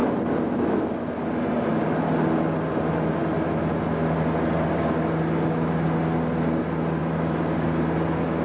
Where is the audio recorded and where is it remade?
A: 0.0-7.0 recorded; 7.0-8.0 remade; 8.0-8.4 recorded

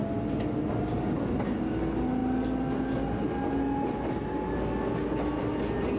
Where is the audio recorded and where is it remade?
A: 0.0-6.0 recorded

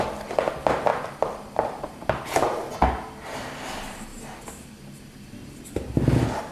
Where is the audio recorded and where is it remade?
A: 0.0-0.9 recorded; 0.9-2.8 remade; 2.8-6.5 recorded

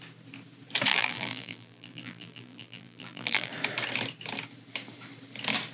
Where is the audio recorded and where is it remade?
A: 0.0-0.9 recorded; 0.9-3.5 remade; 3.5-5.7 recorded